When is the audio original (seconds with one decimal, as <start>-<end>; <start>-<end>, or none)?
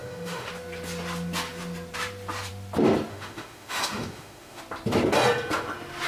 0.5-3.1; 4.6-6.1